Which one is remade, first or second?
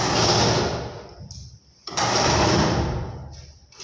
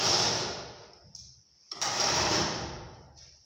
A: second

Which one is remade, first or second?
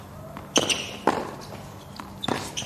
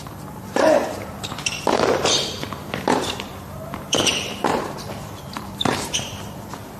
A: second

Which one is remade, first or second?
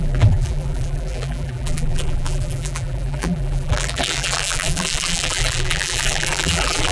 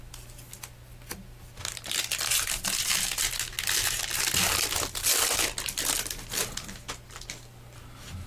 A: first